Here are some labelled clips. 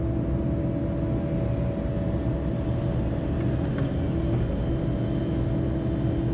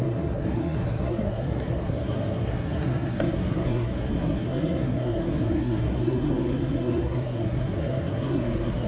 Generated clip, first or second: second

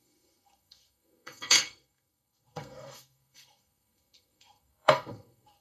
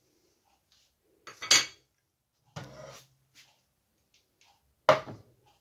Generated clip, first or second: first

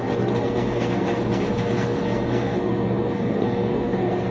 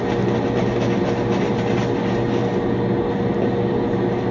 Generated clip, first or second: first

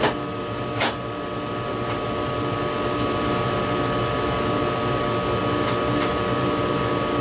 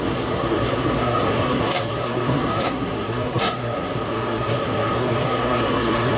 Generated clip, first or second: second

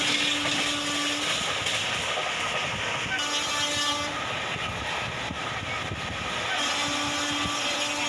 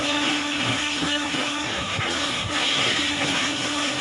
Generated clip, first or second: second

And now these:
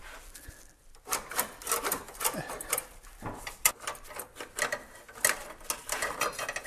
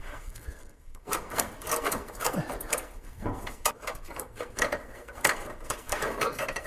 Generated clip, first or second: second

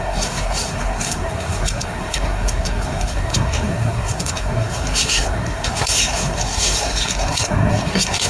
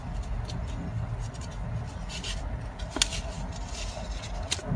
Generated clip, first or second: first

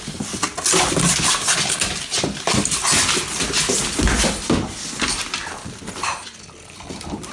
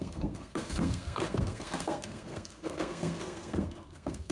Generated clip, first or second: second